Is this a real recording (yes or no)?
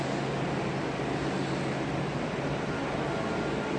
yes